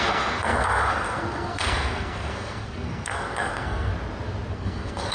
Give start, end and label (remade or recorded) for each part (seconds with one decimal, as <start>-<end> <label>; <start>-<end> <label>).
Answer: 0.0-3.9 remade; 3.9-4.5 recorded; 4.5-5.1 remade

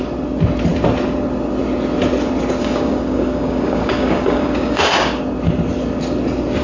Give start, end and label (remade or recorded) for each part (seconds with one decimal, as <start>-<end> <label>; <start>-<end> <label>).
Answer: 0.0-2.6 recorded; 2.6-5.2 remade; 5.2-6.6 recorded

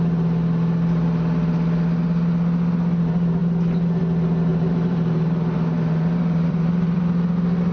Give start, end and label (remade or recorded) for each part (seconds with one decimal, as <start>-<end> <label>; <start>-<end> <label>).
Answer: 0.0-4.5 recorded; 4.5-7.0 remade; 7.0-7.7 recorded

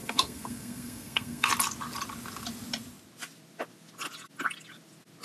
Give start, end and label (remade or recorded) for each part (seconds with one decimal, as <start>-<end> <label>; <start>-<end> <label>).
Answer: 0.0-1.5 remade; 1.5-5.2 recorded